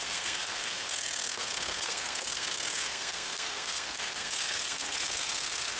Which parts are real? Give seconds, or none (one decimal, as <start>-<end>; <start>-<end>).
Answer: none